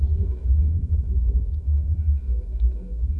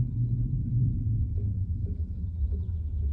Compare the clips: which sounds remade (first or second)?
first